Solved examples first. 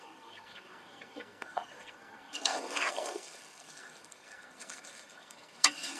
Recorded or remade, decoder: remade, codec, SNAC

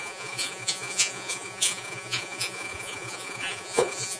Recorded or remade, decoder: remade, vocoder, Vocos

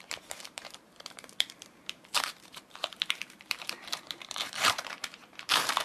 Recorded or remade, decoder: remade, vocoder, BigVGAN v2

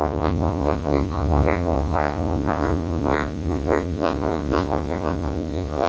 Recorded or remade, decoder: remade, vocoder, Vocos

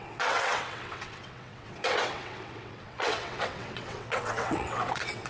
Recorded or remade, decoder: remade, vocoder, WaveNeXt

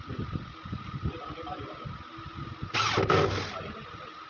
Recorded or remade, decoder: recorded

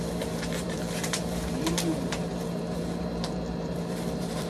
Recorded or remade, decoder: remade, vocoder, BigVGAN v2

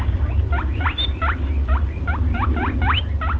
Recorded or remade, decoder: recorded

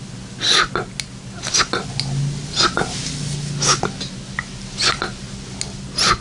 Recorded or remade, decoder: recorded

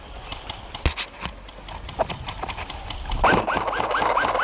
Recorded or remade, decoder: recorded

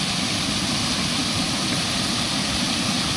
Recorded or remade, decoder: recorded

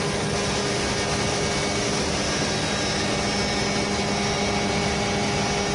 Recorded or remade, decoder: recorded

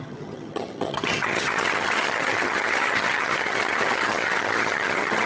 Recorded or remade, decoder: remade, vocoder, HiFi-GAN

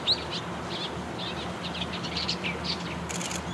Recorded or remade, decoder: recorded